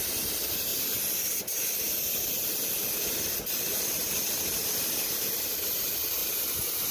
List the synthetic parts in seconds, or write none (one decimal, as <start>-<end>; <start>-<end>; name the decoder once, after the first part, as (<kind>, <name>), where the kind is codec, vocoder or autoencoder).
none

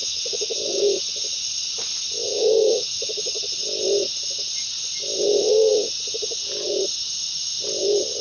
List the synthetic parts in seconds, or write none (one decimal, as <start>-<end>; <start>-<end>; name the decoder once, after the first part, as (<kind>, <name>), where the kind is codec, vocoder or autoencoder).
0.0-1.0 (autoencoder, DAC-VAE); 2.2-3.4

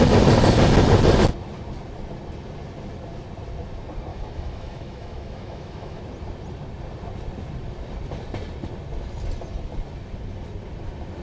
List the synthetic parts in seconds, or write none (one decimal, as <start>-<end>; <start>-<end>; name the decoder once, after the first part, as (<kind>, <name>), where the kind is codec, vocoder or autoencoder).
4.1-6.0 (autoencoder, DAC-VAE)

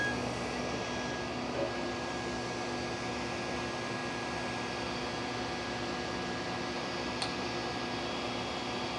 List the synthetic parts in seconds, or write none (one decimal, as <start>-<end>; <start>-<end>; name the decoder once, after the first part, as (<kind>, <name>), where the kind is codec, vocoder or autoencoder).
none

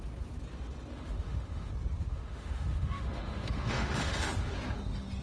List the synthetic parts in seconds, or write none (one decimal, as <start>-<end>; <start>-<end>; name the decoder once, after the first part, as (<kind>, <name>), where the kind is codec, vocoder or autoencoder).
0.9-1.7 (autoencoder, DAC-VAE); 2.1-4.5

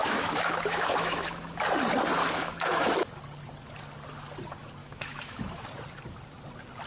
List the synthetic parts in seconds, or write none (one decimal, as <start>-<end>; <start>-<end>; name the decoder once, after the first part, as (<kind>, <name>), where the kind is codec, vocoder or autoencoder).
0.0-1.6 (autoencoder, DAC-VAE); 2.2-3.1; 4.8-5.6

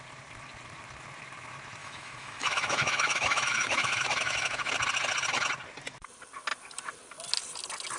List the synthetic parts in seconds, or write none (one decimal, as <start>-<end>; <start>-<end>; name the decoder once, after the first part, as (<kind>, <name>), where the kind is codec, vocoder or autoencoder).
1.8-4.7 (autoencoder, DAC-VAE)